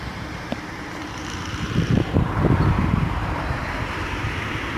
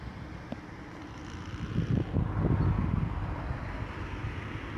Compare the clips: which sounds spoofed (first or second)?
first